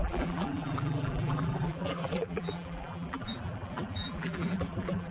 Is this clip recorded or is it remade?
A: remade